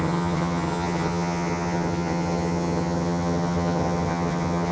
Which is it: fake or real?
fake